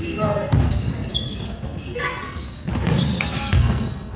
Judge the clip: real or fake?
fake